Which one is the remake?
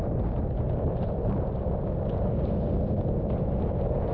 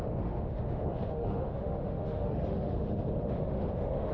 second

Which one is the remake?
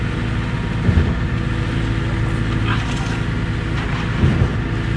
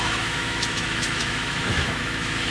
second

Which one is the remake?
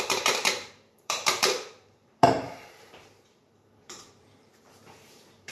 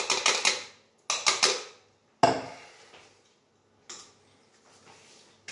first